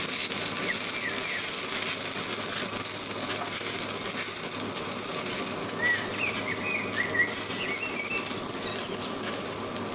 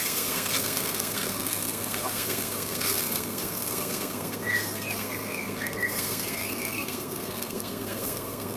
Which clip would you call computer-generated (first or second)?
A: second